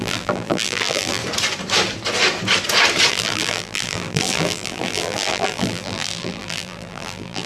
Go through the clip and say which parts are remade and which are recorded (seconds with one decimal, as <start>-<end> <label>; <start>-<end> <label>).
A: 0.0-1.2 remade; 1.2-3.1 recorded; 3.1-7.5 remade